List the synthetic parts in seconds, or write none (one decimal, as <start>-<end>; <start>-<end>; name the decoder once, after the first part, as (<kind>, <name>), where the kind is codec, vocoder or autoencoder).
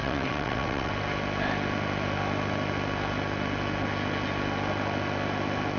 0.0-0.9 (vocoder, WaveNeXt)